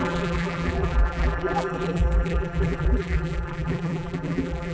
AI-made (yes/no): yes